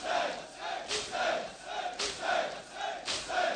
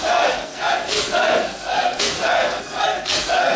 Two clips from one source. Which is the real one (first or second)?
first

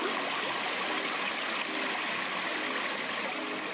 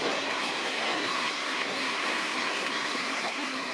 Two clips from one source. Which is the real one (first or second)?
first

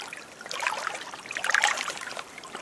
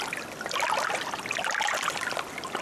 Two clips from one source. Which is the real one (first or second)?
second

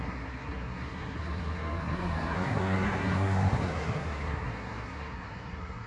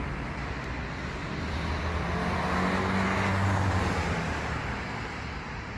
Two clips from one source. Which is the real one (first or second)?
second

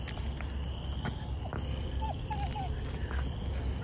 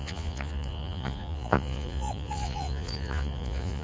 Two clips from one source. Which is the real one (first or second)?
first